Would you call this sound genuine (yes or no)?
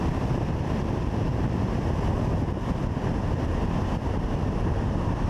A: yes